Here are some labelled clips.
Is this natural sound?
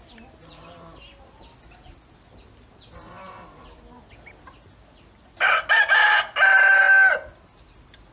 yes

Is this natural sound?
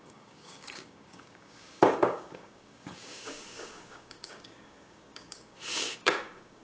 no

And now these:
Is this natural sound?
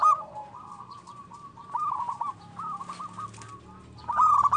yes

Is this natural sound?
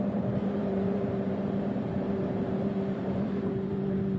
no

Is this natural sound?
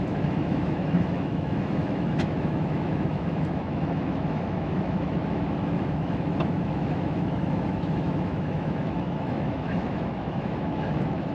no